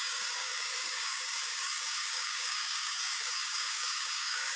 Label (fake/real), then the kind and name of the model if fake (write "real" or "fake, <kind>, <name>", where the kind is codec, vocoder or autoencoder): fake, codec, DAC